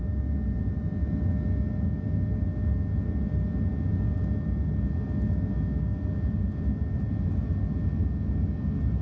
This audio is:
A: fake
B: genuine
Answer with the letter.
B